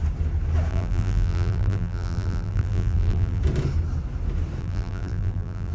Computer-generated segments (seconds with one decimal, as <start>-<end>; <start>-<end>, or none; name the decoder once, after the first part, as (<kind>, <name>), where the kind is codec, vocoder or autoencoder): 0.7-3.4 (vocoder, BigVGAN v2); 4.6-5.7